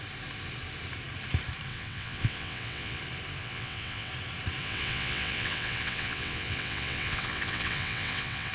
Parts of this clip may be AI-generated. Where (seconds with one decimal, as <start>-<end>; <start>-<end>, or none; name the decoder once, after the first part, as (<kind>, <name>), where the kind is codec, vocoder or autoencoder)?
1.7-3.0 (vocoder, WaveNeXt); 3.4-4.1; 4.6-8.5